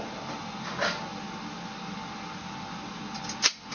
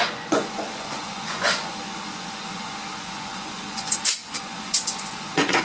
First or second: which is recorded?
first